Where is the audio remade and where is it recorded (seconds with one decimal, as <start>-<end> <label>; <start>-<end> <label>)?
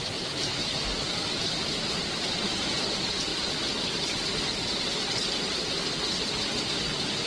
0.0-0.6 remade; 0.6-1.3 recorded; 1.3-3.3 remade; 3.3-6.2 recorded; 6.2-7.3 remade